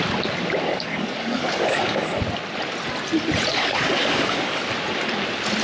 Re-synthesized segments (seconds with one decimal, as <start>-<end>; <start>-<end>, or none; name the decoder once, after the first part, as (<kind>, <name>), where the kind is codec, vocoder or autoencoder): 0.7-2.2 (codec, DAC); 3.5-4.6